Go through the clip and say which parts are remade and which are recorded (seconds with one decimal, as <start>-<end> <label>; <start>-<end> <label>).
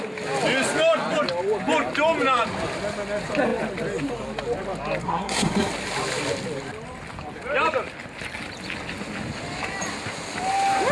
0.0-5.0 recorded; 5.0-5.7 remade; 5.7-10.9 recorded